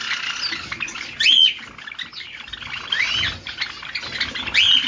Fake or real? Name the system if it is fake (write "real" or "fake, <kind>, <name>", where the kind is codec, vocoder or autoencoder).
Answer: real